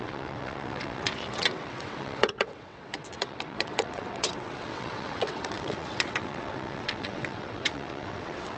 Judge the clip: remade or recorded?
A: remade